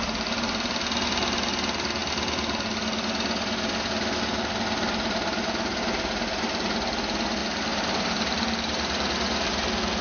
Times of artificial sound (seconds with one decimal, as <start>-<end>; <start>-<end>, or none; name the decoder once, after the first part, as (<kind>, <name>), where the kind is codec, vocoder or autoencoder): 7.4-9.5 (vocoder, BigVGAN v2)